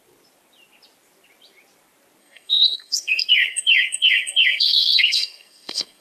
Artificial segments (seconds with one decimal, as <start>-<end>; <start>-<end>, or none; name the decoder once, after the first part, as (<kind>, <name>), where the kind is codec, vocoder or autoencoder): 2.2-6.0 (codec, SNAC)